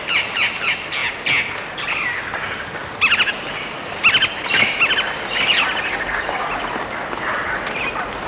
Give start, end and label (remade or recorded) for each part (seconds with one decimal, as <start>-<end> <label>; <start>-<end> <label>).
0.0-8.3 recorded